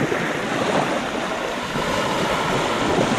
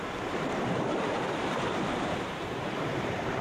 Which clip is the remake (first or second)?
second